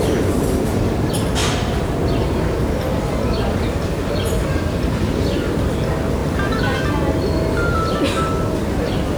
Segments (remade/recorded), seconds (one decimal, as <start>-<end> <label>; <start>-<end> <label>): 0.0-6.2 recorded; 6.2-6.8 remade; 6.8-9.2 recorded